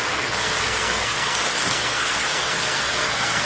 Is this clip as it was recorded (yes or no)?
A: no